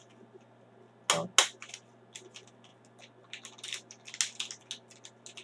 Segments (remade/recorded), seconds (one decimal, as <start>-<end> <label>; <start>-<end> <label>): 0.0-5.4 recorded